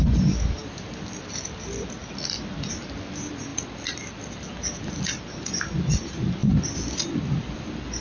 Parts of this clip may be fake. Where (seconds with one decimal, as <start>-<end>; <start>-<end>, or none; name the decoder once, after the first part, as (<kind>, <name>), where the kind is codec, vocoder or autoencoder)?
0.6-1.2 (vocoder, BigVGAN v2); 3.5-4.9; 6.4-8.0